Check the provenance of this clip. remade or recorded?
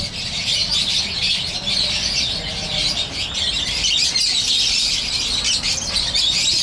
recorded